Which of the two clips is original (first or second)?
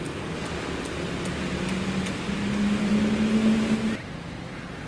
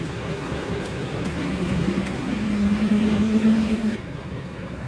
first